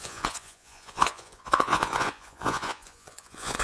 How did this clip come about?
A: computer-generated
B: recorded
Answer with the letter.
A